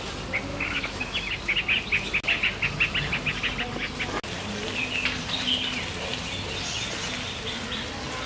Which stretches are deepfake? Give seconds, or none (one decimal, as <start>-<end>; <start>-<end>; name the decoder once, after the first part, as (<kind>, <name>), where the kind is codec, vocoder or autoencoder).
0.5-1.3 (autoencoder, DAC-VAE)